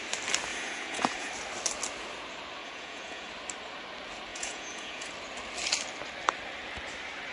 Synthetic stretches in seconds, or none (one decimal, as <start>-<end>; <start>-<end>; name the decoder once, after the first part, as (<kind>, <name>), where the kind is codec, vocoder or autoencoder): 0.5-1.3 (vocoder, Vocos); 2.6-3.3; 4.3-5.1